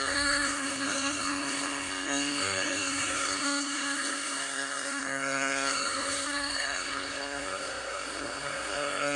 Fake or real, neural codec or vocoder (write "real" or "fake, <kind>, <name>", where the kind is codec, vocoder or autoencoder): fake, codec, SNAC